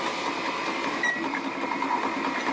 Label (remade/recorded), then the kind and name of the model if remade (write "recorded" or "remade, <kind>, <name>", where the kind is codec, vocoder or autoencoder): recorded